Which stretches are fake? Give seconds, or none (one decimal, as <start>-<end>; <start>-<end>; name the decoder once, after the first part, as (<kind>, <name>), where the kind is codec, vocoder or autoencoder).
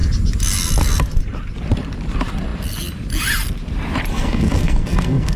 4.1-5.4 (codec, SNAC)